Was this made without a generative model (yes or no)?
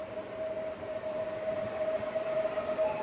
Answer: yes